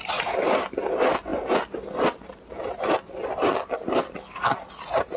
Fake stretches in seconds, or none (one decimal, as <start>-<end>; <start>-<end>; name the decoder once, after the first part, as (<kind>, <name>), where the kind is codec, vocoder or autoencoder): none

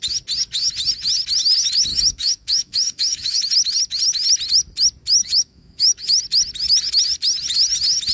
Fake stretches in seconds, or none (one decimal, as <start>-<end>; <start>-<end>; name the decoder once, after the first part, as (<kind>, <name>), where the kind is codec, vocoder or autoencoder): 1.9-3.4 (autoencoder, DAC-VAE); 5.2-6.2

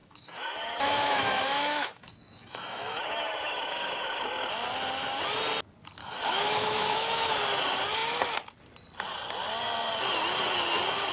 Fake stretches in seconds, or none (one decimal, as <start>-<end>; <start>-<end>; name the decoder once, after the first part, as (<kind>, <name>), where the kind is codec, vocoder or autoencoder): 0.0-4.5 (autoencoder, DAC-VAE); 6.0-7.5